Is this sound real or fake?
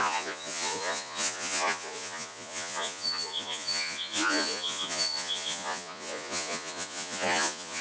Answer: fake